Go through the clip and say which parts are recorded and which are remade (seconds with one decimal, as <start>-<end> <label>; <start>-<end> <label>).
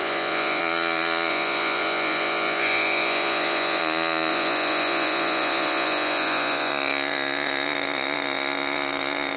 0.0-0.6 remade; 0.6-1.3 recorded; 1.3-3.8 remade; 3.8-4.3 recorded; 4.3-6.7 remade; 6.7-9.4 recorded